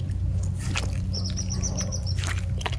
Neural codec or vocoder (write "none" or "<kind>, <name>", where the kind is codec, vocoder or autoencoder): none